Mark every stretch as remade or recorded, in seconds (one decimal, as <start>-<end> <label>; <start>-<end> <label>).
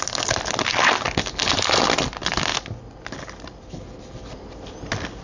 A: 0.0-5.2 recorded